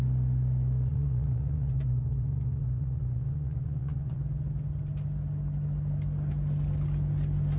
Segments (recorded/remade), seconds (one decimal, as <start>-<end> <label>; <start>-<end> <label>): 0.0-0.9 recorded; 0.9-4.2 remade; 4.2-7.6 recorded